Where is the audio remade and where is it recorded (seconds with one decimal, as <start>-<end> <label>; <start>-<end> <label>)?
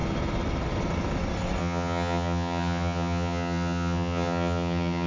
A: 0.0-1.6 recorded; 1.6-5.1 remade